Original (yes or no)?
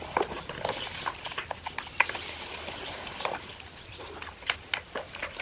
yes